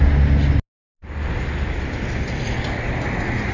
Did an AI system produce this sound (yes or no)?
no